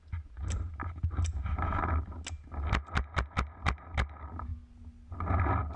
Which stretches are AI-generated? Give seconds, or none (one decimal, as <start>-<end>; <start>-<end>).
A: none

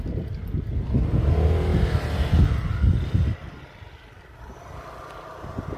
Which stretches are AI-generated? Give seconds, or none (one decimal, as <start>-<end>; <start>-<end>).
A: none

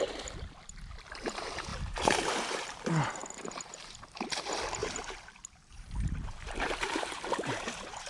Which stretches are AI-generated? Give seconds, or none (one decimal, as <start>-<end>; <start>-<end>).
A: 0.0-8.1

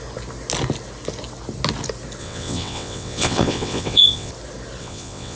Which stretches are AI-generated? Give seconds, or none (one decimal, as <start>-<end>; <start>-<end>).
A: 2.2-4.3; 4.8-5.4

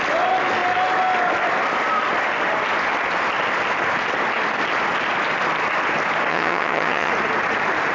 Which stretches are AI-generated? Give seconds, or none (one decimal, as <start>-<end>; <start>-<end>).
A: 6.3-7.1